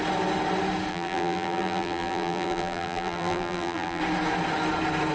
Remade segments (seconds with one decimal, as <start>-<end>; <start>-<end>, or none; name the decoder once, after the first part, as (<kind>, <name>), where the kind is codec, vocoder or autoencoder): 0.9-4.0 (vocoder, BigVGAN v2)